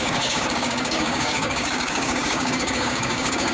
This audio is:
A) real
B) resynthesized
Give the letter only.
B